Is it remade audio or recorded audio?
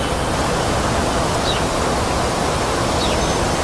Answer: recorded